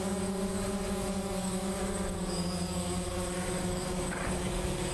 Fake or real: fake